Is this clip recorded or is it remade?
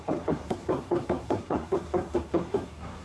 remade